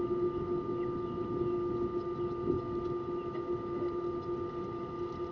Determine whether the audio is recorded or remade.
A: recorded